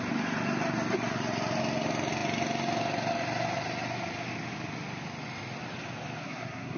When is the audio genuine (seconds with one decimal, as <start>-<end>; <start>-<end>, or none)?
0.0-6.2